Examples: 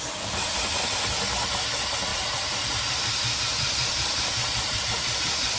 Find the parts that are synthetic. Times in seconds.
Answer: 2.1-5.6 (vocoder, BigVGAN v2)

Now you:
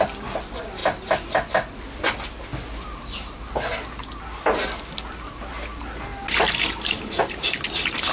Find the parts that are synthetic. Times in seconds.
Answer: none

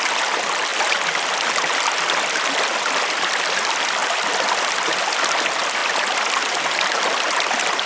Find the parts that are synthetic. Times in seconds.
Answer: 4.0-5.0 (vocoder, BigVGAN v2); 5.8-7.9

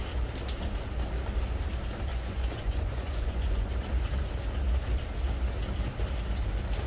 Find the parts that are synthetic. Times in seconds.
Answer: 2.1-3.7 (vocoder, Vocos)

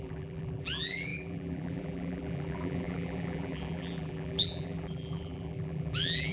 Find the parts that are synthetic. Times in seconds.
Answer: 0.0-6.3 (vocoder, BigVGAN v2)

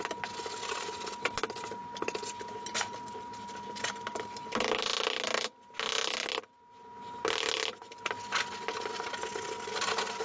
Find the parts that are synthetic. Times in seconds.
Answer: none

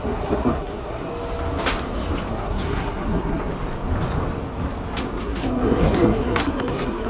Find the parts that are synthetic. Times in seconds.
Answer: 0.0-1.1 (codec, SNAC); 2.3-3.5; 5.2-7.1